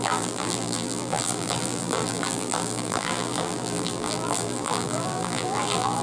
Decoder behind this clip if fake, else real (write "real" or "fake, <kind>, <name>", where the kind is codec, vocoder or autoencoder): fake, vocoder, BigVGAN v2